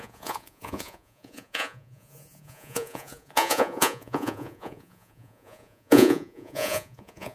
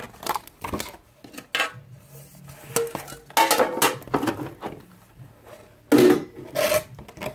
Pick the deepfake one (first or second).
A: first